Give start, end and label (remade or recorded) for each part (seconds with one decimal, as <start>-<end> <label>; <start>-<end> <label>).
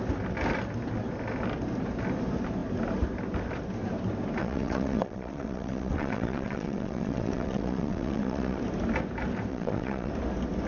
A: 0.0-4.4 recorded; 4.4-8.6 remade; 8.6-9.5 recorded; 9.5-10.1 remade; 10.1-10.7 recorded